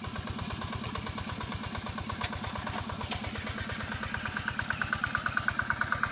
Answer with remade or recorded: recorded